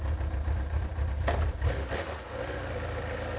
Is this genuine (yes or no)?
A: yes